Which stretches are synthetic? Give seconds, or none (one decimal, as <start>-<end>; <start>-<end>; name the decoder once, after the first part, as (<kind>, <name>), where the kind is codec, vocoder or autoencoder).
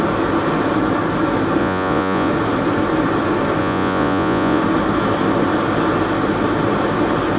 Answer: 1.6-2.3 (vocoder, Vocos); 3.6-4.6